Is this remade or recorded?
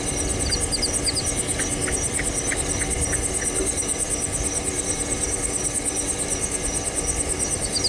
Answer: recorded